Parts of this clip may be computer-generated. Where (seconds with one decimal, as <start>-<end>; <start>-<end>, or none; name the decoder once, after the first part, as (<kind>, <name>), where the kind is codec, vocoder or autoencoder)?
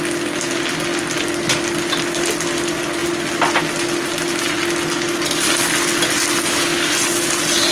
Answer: none